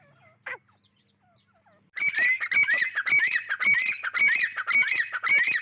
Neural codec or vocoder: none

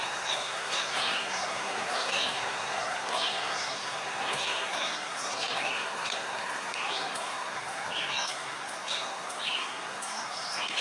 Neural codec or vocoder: codec, SNAC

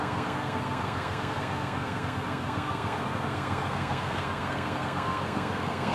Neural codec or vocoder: codec, SNAC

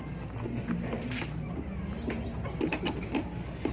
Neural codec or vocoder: none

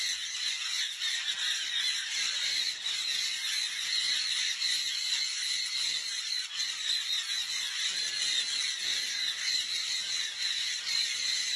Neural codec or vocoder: none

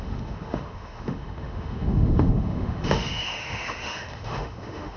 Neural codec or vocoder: autoencoder, DAC-VAE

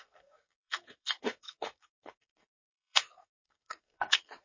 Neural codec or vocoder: codec, SNAC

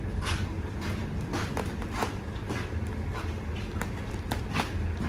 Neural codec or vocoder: none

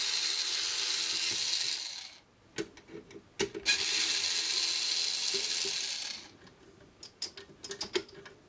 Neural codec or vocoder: none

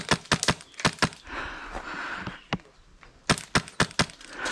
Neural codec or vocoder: none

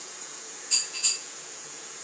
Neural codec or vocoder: vocoder, Vocos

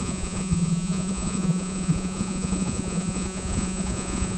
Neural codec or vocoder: vocoder, Vocos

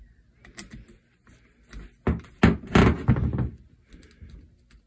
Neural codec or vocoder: none